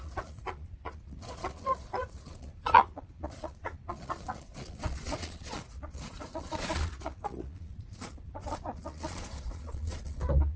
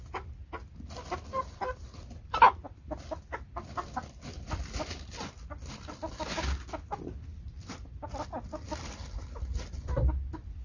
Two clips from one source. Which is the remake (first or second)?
first